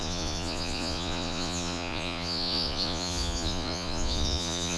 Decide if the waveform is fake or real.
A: fake